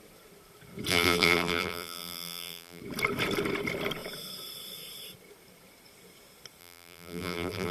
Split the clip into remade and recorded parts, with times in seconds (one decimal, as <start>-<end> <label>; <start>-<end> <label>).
0.0-0.9 recorded; 0.9-2.8 remade; 2.8-6.6 recorded; 6.6-7.7 remade